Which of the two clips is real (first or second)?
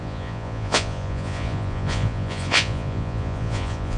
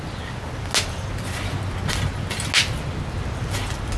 second